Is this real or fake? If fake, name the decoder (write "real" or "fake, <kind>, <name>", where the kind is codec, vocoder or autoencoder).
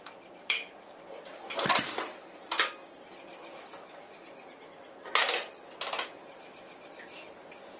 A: real